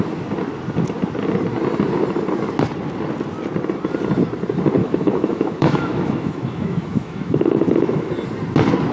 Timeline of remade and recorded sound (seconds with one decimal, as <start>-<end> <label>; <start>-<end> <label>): 0.0-4.8 recorded; 4.8-8.1 remade; 8.1-8.9 recorded